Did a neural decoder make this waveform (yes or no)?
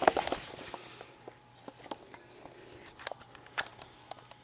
no